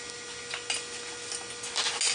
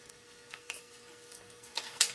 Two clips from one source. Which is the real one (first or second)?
first